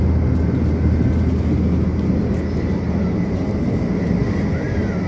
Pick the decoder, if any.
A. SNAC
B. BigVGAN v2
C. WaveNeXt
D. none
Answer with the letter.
D